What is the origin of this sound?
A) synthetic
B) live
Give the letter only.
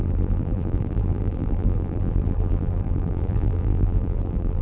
A